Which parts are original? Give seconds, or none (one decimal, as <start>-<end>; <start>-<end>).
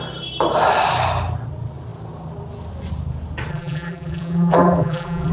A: 0.0-3.5